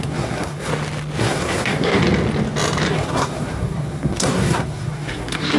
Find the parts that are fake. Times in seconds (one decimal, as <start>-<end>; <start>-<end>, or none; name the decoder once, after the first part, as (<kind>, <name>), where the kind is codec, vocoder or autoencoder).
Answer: 0.0-0.7 (codec, SNAC); 1.2-2.0; 2.9-5.6

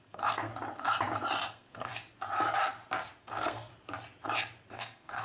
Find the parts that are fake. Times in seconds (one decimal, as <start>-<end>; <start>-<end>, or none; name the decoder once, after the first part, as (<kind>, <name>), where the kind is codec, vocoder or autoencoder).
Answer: 0.0-0.5 (codec, SNAC); 1.5-1.9; 3.2-3.7; 4.7-5.2

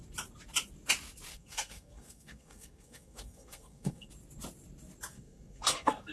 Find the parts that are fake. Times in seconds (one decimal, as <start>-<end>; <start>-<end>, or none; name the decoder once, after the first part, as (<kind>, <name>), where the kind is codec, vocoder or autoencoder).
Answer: 1.3-4.1 (codec, SNAC); 5.1-6.1

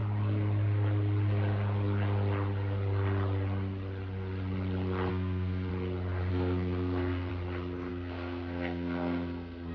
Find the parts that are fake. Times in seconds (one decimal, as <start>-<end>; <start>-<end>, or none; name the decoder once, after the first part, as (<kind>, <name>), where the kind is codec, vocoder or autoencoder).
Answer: 5.1-5.7 (codec, SNAC); 6.3-7.3; 7.9-9.7

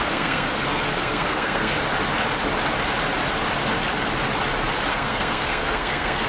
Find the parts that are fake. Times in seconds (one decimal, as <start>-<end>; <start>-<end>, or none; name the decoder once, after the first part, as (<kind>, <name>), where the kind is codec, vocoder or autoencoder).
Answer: 0.0-1.7 (codec, SNAC); 4.9-6.3

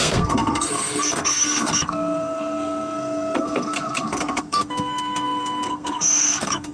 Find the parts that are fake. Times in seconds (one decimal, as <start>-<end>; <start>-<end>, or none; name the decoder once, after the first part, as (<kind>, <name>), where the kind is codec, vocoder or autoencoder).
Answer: 0.0-6.7 (codec, SNAC)

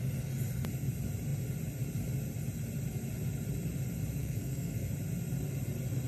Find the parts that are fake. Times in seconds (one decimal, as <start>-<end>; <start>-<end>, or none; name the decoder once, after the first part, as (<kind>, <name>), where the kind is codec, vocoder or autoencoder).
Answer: 4.2-4.9 (codec, SNAC)

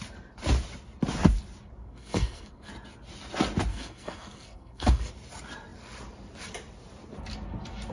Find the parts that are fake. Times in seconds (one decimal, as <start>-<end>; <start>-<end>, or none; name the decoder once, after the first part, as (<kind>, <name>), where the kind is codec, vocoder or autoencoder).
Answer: 1.8-2.7 (codec, SNAC); 3.7-5.1